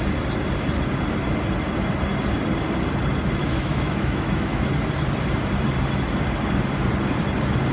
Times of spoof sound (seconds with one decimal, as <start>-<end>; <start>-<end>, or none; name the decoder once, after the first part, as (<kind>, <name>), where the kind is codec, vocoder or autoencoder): 3.4-4.7 (autoencoder, DAC-VAE)